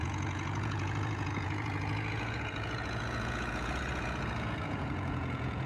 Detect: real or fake fake